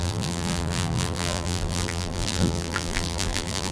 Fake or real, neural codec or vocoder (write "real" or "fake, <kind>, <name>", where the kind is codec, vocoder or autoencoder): fake, vocoder, BigVGAN v2